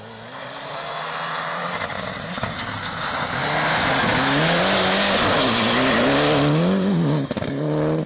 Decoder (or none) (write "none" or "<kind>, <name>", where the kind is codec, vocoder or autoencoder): none